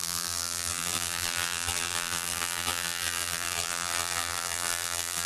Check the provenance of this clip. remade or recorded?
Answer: remade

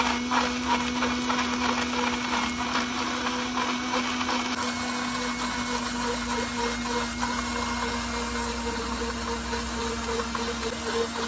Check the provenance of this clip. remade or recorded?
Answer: recorded